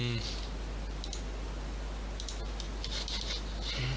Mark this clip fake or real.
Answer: real